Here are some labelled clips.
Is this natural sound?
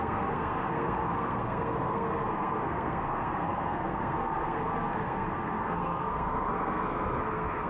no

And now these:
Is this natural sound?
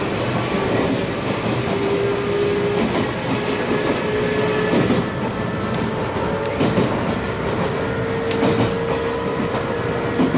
yes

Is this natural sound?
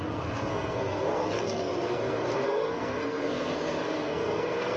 no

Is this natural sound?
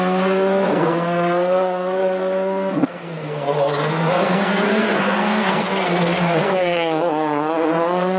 no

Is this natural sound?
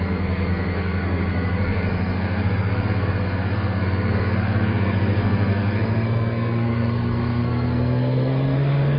no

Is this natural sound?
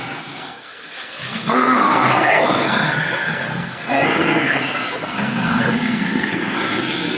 no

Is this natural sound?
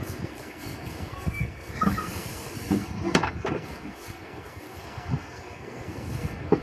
no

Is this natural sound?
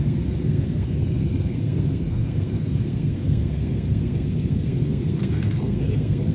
no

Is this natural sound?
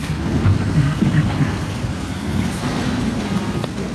no